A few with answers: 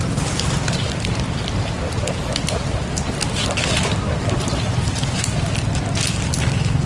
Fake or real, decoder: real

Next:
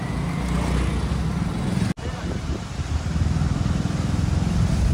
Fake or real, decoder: real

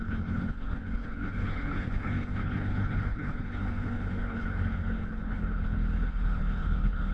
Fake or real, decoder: fake, codec, HILCodec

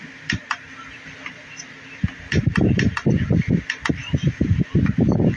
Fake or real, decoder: fake, vocoder, BigVGAN v2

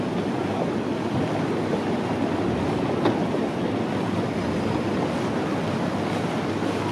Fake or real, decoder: real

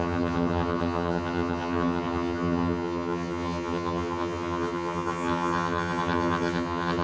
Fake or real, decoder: fake, vocoder, HiFi-GAN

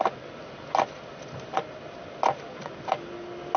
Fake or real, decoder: real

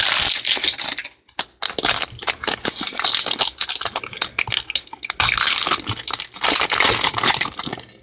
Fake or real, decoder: real